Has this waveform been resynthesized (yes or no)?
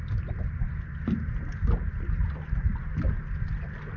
no